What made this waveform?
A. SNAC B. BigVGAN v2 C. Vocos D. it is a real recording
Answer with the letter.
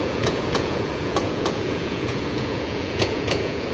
C